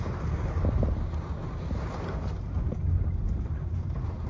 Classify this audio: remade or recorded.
recorded